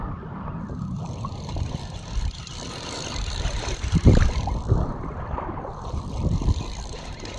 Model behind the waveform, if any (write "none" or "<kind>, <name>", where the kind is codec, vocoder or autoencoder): vocoder, BigVGAN v2